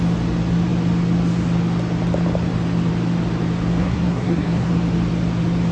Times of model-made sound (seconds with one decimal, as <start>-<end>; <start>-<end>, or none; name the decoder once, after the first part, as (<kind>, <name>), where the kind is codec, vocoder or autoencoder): 3.8-4.7 (codec, SNAC)

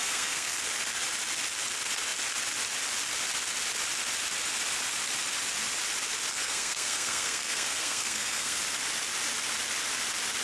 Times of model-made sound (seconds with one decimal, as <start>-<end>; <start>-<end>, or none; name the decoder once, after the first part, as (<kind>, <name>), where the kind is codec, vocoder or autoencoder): 0.0-0.6 (codec, SNAC); 6.3-8.6

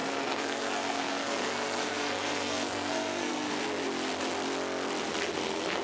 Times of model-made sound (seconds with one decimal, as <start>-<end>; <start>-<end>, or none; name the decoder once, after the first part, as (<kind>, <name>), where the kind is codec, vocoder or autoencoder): 0.0-3.5 (codec, SNAC)

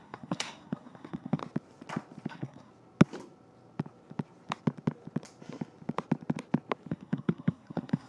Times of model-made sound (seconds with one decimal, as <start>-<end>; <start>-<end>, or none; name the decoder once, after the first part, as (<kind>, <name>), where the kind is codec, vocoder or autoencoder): 0.0-1.4 (codec, SNAC); 2.3-2.7; 6.9-8.1

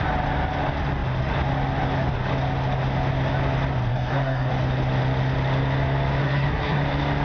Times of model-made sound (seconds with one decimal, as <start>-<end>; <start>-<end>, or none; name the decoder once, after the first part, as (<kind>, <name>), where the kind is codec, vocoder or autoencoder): 3.9-4.5 (codec, SNAC); 6.2-6.8

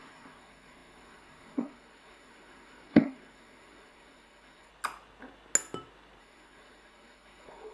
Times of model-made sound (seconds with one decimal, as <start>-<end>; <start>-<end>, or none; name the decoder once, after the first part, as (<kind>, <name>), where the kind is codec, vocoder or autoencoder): 0.0-4.7 (codec, SNAC); 6.2-7.7